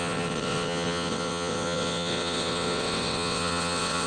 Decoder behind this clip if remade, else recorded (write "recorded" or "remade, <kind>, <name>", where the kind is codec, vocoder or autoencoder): remade, vocoder, WaveNeXt